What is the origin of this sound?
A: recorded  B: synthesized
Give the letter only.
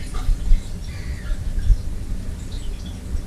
A